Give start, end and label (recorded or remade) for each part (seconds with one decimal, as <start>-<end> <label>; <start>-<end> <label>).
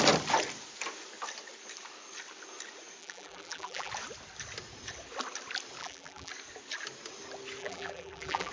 0.0-3.0 recorded; 3.0-3.9 remade; 3.9-5.8 recorded; 5.8-6.3 remade; 6.3-7.6 recorded; 7.6-8.5 remade